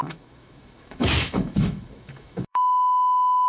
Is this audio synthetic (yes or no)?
yes